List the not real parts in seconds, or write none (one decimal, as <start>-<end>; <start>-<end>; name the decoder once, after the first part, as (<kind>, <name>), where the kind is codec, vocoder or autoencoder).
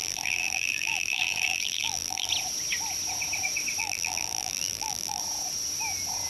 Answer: 0.0-2.3 (vocoder, BigVGAN v2); 3.8-5.2